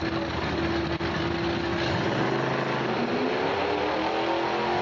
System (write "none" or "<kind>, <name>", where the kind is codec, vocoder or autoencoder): none